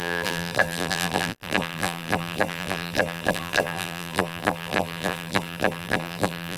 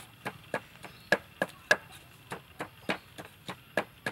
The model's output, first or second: first